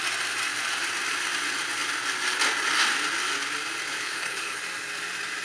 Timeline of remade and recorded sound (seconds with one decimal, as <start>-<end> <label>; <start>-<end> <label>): 0.0-3.9 recorded; 3.9-4.6 remade; 4.6-5.4 recorded